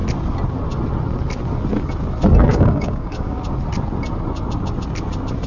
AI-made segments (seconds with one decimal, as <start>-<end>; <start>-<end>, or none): 2.5-3.4